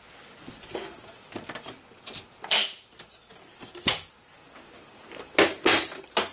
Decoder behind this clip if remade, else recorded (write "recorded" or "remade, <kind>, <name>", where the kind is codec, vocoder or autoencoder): recorded